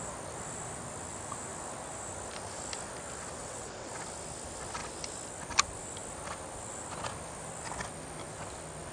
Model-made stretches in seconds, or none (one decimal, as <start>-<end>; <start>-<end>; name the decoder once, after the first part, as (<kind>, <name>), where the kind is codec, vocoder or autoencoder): 3.4-3.9 (vocoder, WaveNeXt)